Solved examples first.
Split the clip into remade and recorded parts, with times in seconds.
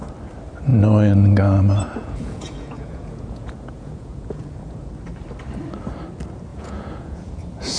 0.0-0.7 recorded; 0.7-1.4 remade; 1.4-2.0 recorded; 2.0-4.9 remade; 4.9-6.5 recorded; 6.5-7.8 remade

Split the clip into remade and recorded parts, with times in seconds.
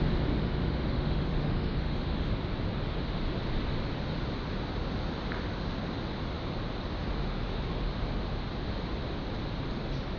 0.0-0.4 recorded; 0.4-2.3 remade; 2.3-7.2 recorded; 7.2-7.9 remade; 7.9-10.2 recorded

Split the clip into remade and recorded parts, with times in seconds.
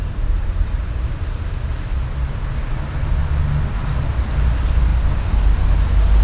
0.0-6.2 recorded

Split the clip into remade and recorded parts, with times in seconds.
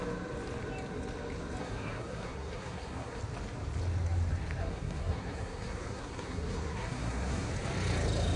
0.0-1.6 recorded; 1.6-3.2 remade; 3.2-4.6 recorded; 4.6-7.5 remade; 7.5-8.4 recorded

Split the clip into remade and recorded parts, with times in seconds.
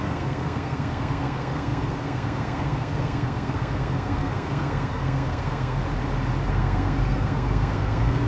0.0-5.8 remade; 5.8-6.5 recorded; 6.5-8.3 remade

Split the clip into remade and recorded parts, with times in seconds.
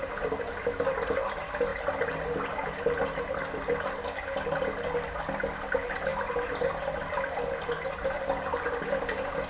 0.0-9.5 recorded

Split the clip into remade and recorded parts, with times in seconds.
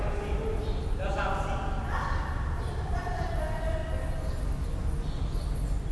0.0-5.9 recorded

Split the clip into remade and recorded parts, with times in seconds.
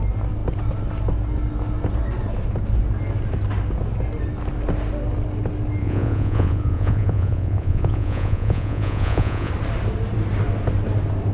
0.0-5.8 recorded; 5.8-9.5 remade; 9.5-11.3 recorded